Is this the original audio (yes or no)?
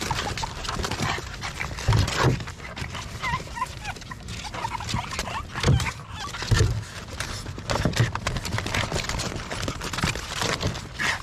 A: yes